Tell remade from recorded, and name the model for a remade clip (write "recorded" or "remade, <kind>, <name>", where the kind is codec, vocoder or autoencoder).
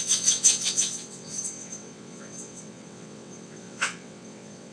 remade, vocoder, WaveNeXt